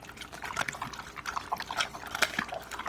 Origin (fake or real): real